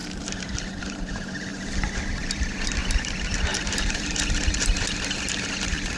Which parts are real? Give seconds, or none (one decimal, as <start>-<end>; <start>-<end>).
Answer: none